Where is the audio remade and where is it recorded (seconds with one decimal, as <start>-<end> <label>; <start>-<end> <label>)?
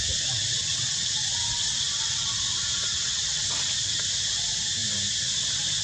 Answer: 0.0-0.6 recorded; 0.6-2.4 remade; 2.4-2.9 recorded; 2.9-3.5 remade; 3.5-5.8 recorded